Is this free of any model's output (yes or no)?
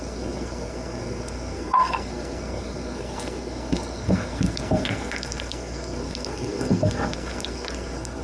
no